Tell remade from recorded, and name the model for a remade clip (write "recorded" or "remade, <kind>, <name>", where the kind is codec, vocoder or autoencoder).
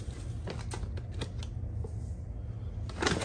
recorded